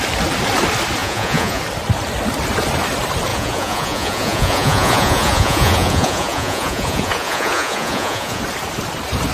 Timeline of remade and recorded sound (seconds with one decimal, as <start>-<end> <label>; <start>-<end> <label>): 0.0-1.0 recorded; 1.0-1.6 remade; 1.6-3.3 recorded; 3.3-8.4 remade; 8.4-9.3 recorded